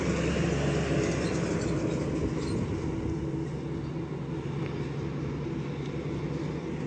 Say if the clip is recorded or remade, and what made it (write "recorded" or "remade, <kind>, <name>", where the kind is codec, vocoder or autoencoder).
recorded